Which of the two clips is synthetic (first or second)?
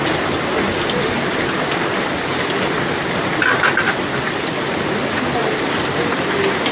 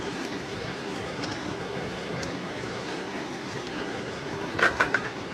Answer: second